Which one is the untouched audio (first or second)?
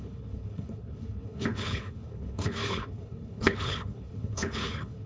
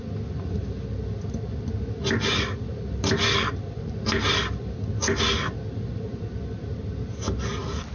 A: second